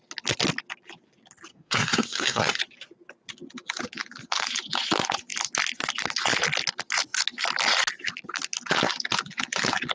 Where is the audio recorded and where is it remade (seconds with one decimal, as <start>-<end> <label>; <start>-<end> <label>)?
0.0-1.5 recorded; 1.5-2.6 remade; 2.6-9.9 recorded